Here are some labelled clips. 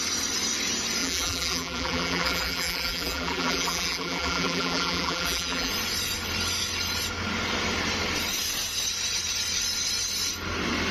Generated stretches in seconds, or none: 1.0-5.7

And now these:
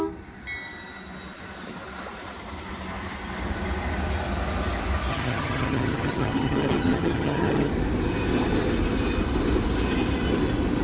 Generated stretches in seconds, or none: 5.1-7.7

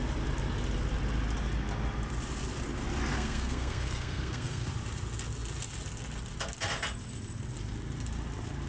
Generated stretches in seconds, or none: 3.1-4.7

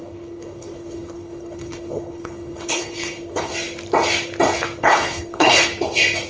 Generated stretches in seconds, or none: 0.0-3.5; 4.8-5.7

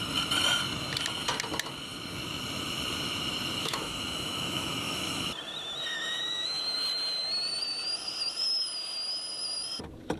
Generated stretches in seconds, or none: 3.6-5.3; 5.9-6.6

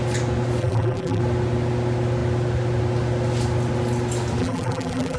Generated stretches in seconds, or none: 0.6-1.2; 4.4-5.2

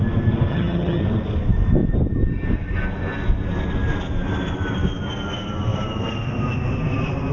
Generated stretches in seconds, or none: 0.5-1.0